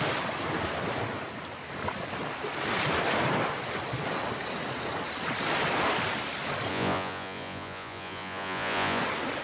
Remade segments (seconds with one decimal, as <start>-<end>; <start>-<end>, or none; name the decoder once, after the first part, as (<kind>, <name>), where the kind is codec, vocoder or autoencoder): 6.7-9.0 (vocoder, Vocos)